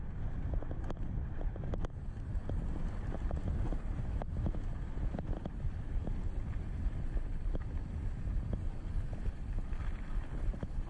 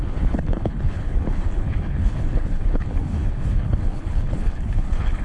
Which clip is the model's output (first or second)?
second